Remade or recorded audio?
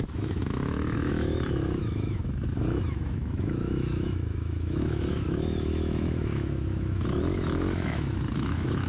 remade